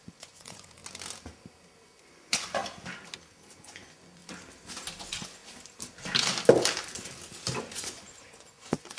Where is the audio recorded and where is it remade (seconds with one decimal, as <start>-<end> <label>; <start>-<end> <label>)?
0.0-0.8 remade; 0.8-2.0 recorded; 2.0-2.6 remade; 2.6-3.6 recorded; 3.6-4.2 remade; 4.2-5.0 recorded; 5.0-5.4 remade; 5.4-7.6 recorded; 7.6-9.0 remade